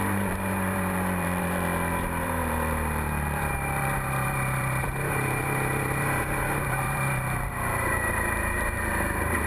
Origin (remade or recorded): remade